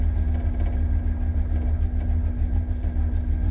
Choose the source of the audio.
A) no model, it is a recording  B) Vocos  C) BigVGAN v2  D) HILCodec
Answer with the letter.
A